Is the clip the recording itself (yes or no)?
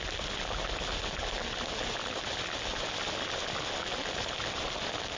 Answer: yes